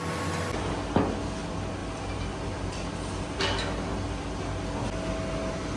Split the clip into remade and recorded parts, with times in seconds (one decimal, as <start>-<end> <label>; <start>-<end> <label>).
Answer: 0.0-1.8 recorded; 1.8-3.4 remade; 3.4-5.8 recorded